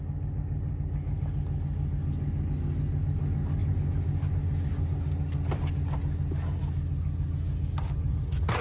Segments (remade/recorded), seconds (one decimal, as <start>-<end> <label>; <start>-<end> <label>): 0.0-8.6 recorded